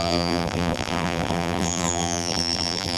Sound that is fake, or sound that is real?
fake